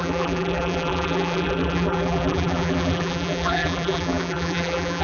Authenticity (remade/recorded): remade